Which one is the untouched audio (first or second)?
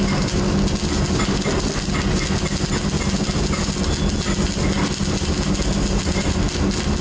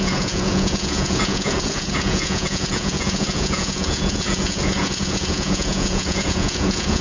first